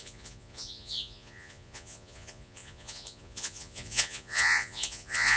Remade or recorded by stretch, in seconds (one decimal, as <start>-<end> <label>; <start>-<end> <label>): 0.0-5.4 remade